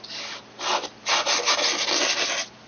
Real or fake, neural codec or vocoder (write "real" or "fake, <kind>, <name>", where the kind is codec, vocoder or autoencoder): real